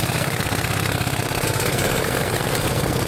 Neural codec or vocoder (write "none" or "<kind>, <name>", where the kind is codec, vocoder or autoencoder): codec, SNAC